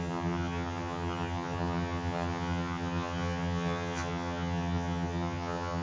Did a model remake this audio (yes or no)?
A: yes